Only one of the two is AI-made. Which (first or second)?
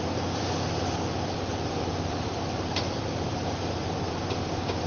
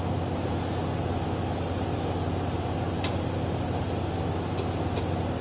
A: first